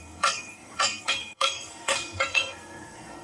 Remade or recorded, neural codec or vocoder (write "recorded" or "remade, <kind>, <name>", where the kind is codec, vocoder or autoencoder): remade, codec, SNAC